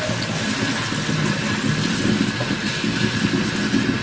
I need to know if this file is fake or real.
real